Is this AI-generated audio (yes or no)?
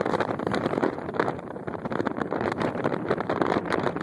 yes